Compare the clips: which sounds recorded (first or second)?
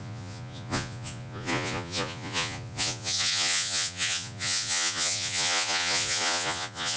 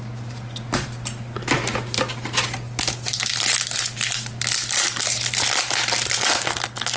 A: second